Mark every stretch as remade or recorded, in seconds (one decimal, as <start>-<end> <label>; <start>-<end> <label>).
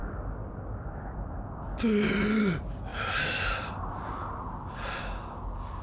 0.0-5.8 recorded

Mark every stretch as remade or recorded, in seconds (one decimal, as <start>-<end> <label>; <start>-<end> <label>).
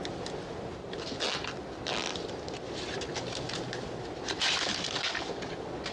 0.0-5.9 recorded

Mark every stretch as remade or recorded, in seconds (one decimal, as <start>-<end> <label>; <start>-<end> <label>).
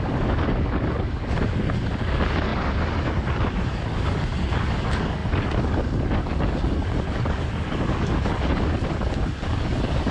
0.0-10.1 remade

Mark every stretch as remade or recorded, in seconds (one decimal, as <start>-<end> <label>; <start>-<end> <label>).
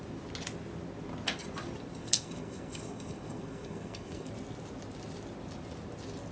0.0-2.0 recorded; 2.0-4.3 remade; 4.3-6.3 recorded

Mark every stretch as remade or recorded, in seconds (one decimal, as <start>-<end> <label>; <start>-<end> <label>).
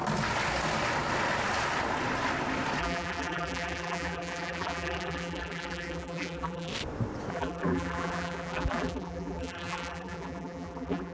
0.0-2.8 recorded; 2.8-6.7 remade; 6.7-7.3 recorded; 7.3-11.1 remade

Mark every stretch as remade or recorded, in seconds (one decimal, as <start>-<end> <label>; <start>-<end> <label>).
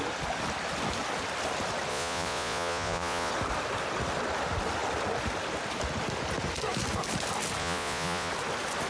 0.0-1.9 recorded; 1.9-3.3 remade; 3.3-7.6 recorded; 7.6-8.3 remade; 8.3-8.9 recorded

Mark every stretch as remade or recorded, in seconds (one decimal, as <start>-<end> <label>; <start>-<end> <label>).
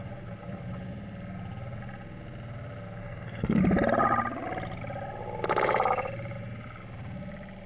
0.0-3.0 recorded; 3.0-3.6 remade; 3.6-7.7 recorded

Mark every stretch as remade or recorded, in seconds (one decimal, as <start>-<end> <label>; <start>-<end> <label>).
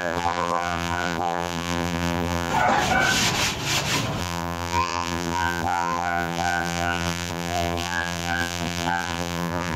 0.0-2.5 remade; 2.5-4.2 recorded; 4.2-9.8 remade